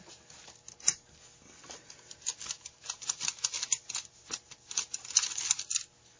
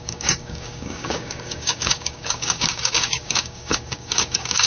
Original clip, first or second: first